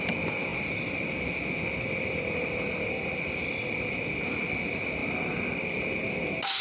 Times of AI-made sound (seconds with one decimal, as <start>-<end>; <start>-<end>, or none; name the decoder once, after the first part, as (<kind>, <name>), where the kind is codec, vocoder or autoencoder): none